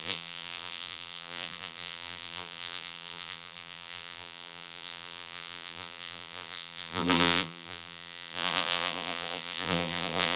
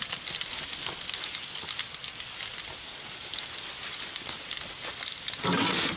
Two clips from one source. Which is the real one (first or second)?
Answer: second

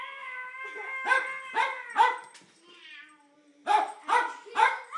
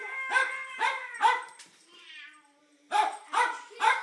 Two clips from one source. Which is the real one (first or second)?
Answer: first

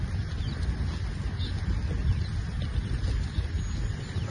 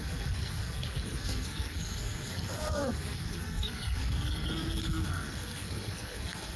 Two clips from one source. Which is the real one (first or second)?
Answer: first